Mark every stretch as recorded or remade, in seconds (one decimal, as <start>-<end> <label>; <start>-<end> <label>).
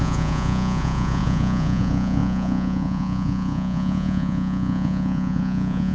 0.0-5.9 remade